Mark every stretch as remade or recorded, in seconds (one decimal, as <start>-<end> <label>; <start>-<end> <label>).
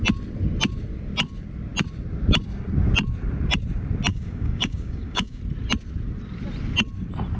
0.0-4.1 recorded; 4.1-5.4 remade; 5.4-7.4 recorded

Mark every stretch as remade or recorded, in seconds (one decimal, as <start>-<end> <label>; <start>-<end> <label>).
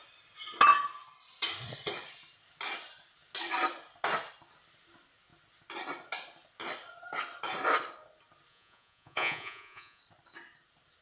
0.0-8.5 recorded; 8.5-10.0 remade; 10.0-11.0 recorded